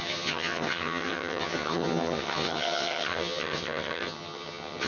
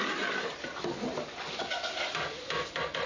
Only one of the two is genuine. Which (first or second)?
second